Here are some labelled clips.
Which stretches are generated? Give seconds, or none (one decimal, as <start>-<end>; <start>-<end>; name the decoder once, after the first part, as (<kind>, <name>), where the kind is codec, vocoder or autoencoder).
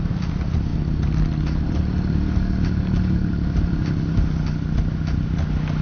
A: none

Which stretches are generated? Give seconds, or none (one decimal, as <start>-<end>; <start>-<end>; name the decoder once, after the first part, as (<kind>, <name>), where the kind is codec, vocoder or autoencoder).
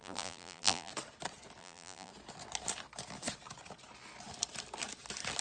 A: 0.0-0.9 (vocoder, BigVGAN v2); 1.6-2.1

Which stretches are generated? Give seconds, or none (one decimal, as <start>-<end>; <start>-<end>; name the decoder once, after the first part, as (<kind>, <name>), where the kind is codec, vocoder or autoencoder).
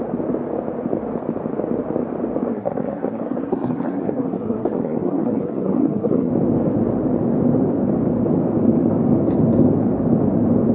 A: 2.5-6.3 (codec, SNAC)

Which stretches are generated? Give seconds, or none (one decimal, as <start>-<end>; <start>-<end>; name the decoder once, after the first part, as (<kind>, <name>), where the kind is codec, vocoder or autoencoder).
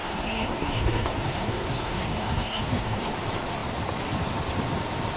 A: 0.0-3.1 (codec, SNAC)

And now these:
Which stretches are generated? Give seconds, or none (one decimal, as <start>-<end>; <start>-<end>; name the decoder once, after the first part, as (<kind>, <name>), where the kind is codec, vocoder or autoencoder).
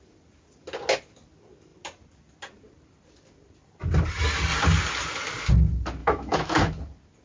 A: 6.0-6.8 (autoencoder, DAC-VAE)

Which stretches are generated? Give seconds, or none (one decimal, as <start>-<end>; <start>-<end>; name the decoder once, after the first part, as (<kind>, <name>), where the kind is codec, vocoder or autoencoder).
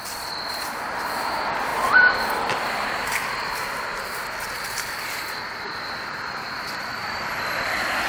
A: none